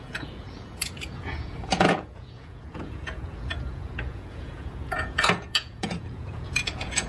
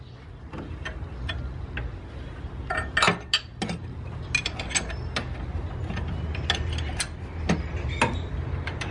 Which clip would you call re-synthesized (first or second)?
first